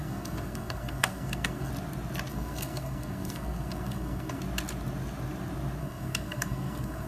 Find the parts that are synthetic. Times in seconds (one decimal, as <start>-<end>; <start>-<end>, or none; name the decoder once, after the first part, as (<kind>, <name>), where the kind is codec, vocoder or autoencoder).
0.0-1.7 (codec, SNAC); 2.3-4.4; 5.8-7.1